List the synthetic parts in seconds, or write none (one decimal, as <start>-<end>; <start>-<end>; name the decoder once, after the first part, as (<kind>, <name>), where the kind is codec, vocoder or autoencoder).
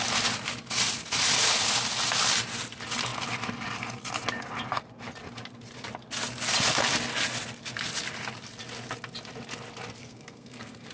10.0-10.9 (codec, SNAC)